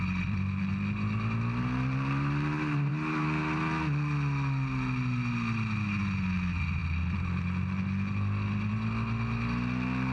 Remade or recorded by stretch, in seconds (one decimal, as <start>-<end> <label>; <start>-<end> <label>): 0.0-10.1 recorded